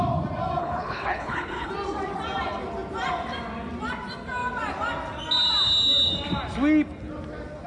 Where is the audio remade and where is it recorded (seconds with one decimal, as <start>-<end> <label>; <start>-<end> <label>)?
0.0-0.6 recorded; 0.6-1.7 remade; 1.7-7.7 recorded